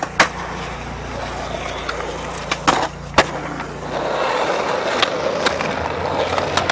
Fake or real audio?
real